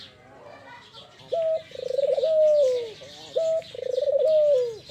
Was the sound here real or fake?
real